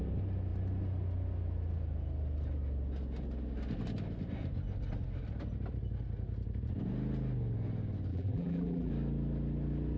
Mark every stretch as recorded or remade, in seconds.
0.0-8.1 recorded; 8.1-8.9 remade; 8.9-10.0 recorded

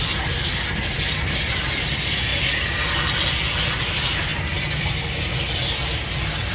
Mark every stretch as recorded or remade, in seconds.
0.0-2.3 remade; 2.3-3.8 recorded; 3.8-4.3 remade; 4.3-6.5 recorded

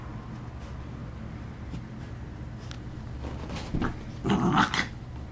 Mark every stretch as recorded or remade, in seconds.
0.0-1.0 recorded; 1.0-2.0 remade; 2.0-5.3 recorded

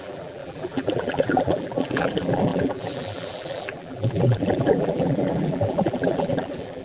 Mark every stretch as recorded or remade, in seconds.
0.0-6.8 remade